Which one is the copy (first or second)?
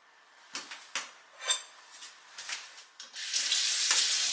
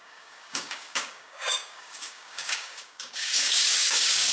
second